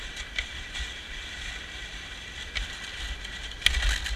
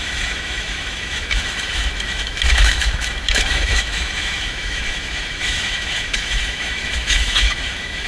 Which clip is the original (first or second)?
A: first